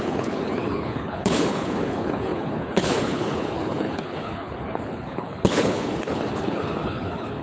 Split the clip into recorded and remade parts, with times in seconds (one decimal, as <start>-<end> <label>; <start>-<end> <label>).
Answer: 0.0-7.4 remade